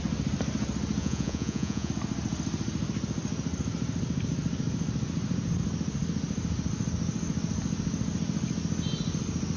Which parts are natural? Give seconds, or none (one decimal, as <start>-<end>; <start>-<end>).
0.0-1.0; 1.9-9.6